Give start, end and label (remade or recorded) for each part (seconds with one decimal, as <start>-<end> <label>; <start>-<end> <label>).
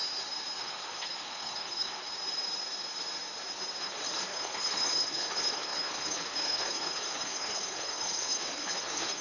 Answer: 0.0-0.6 recorded; 0.6-2.1 remade; 2.1-3.8 recorded; 3.8-9.2 remade